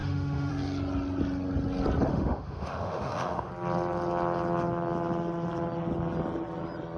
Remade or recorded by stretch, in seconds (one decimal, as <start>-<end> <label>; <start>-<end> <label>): 0.0-0.5 remade; 0.5-2.1 recorded; 2.1-3.5 remade; 3.5-7.0 recorded